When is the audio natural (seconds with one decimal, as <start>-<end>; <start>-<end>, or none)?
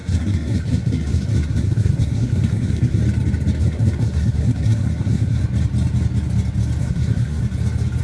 3.0-3.6; 5.4-6.8; 7.4-8.0